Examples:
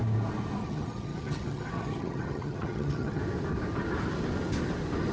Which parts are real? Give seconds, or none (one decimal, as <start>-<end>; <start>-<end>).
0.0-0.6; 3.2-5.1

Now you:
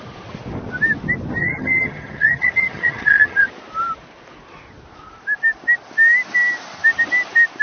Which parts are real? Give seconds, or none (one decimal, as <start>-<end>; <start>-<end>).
0.0-1.4; 3.5-7.6

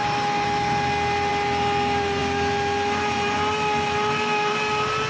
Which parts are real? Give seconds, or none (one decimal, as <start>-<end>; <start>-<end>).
0.0-5.1

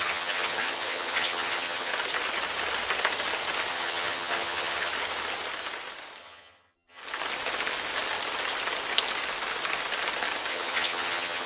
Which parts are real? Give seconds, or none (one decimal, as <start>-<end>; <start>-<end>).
1.9-3.7; 4.9-6.2; 7.0-10.5

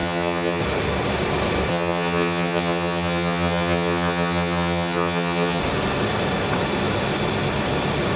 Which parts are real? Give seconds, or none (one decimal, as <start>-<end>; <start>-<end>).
0.6-1.7; 5.6-8.2

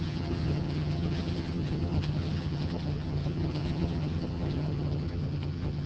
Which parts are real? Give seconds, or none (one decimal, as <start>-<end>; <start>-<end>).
none

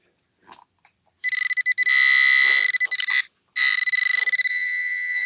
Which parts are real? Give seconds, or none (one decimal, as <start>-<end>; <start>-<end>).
0.0-4.5